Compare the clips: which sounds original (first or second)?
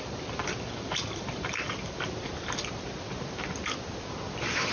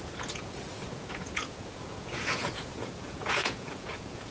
first